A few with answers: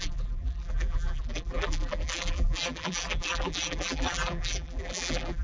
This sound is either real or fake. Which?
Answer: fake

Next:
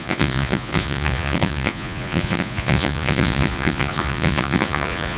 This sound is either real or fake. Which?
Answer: fake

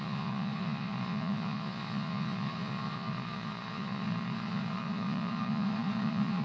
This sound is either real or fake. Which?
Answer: fake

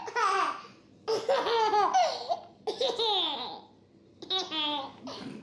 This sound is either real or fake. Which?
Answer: real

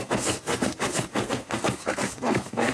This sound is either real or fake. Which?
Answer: fake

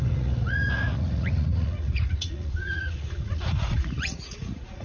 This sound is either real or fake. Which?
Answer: fake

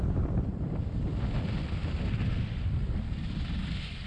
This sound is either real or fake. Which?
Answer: fake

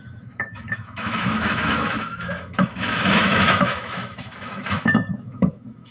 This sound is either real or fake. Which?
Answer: fake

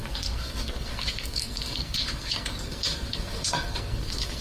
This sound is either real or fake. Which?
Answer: fake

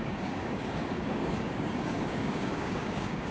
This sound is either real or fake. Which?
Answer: fake